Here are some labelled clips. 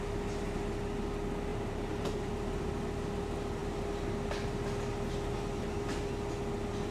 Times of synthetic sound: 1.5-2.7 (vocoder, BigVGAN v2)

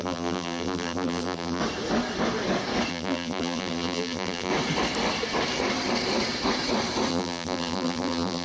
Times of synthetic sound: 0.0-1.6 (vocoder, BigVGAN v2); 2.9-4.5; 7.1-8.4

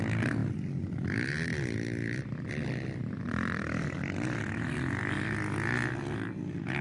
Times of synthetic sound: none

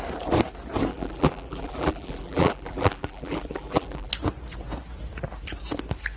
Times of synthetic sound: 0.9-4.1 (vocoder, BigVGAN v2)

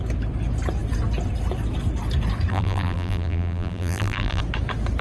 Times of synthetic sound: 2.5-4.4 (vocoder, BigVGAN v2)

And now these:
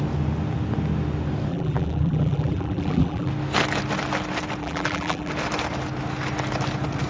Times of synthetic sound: 1.5-3.3 (vocoder, BigVGAN v2); 4.6-5.3

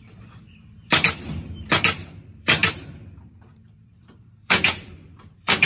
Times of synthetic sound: 0.0-5.7 (vocoder, BigVGAN v2)

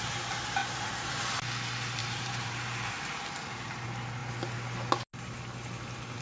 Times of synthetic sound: 0.6-1.1 (vocoder, BigVGAN v2); 2.0-3.2